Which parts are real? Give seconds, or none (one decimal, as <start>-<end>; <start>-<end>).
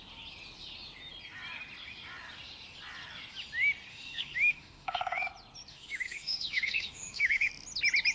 0.0-3.9; 5.3-5.7; 7.5-8.1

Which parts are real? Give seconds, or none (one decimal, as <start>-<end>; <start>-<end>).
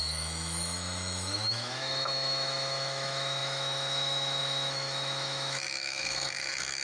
none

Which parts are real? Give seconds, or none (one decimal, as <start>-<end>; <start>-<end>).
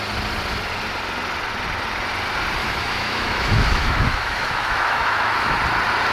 0.0-2.6; 5.6-6.1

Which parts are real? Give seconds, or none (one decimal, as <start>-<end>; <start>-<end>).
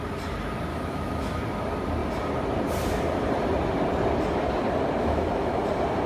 0.0-0.7; 1.4-5.0; 5.6-6.1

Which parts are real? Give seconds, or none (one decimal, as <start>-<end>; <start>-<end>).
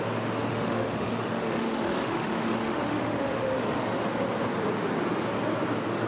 0.0-0.5; 3.8-6.1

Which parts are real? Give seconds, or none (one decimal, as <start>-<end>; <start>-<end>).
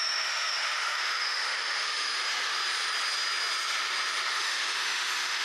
2.1-4.3